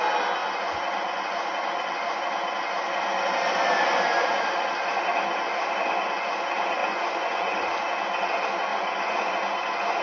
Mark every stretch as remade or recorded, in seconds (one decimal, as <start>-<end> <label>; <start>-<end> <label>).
0.0-0.4 recorded; 0.4-2.2 remade; 2.2-6.8 recorded; 6.8-7.7 remade; 7.7-8.7 recorded; 8.7-10.0 remade